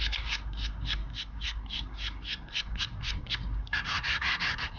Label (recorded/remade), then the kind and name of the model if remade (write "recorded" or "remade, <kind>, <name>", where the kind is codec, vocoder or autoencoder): remade, codec, SNAC